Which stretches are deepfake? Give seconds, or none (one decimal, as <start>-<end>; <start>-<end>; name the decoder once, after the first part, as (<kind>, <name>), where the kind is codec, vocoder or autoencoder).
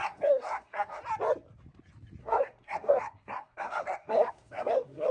0.0-1.0 (codec, SNAC); 2.2-5.1